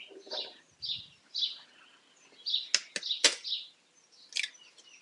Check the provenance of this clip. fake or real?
real